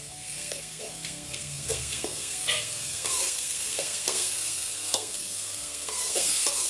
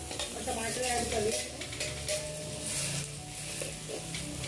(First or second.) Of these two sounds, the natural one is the second